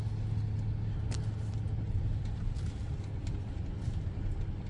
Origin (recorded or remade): recorded